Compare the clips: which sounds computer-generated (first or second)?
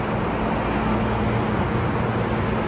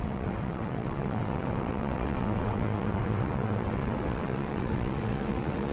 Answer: second